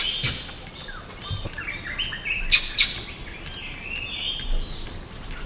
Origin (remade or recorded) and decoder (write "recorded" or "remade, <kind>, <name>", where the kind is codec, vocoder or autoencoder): recorded